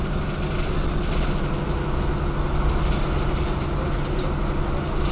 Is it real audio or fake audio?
real